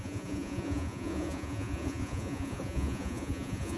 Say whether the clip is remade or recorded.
remade